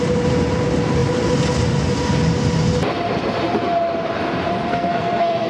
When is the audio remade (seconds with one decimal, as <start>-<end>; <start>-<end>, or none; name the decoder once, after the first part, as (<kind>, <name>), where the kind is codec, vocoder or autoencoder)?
4.7-5.5 (codec, SNAC)